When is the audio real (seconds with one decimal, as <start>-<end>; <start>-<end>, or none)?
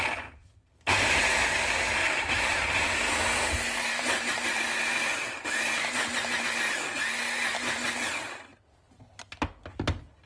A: 0.0-0.4; 5.3-10.3